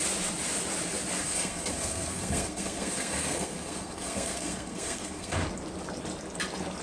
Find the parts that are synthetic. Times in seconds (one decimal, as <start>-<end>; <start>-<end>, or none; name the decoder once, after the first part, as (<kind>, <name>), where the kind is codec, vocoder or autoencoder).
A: 1.2-5.3 (codec, SNAC)